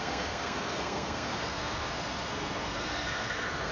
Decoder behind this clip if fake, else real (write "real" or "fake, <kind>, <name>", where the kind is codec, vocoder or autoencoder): fake, codec, SNAC